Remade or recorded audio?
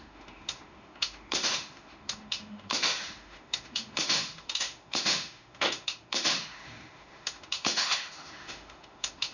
remade